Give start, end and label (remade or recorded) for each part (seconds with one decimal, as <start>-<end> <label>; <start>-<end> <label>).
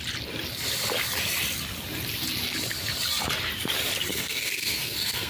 0.0-4.1 recorded; 4.1-5.3 remade